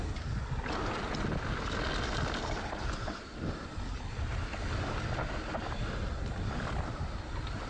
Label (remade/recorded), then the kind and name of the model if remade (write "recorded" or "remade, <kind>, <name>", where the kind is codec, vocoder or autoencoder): recorded